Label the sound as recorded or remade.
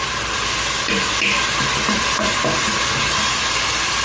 recorded